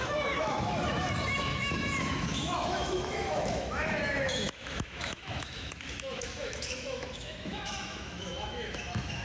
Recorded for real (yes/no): no